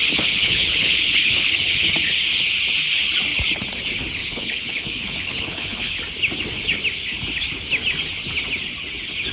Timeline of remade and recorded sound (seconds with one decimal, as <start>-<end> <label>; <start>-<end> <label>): 0.0-1.9 remade; 1.9-4.2 recorded; 4.2-6.0 remade; 6.0-9.3 recorded